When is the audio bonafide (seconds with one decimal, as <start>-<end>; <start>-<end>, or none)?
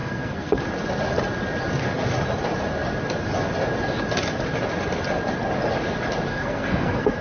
0.6-6.3